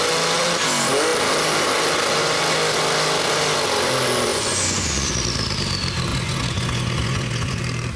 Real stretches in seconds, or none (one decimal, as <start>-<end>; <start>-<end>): 0.0-4.3; 5.1-6.1; 7.6-8.0